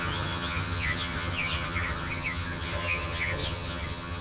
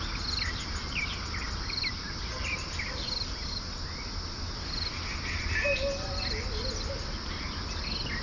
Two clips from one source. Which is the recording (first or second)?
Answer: second